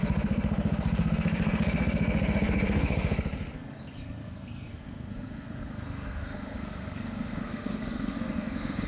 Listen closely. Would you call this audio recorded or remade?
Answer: remade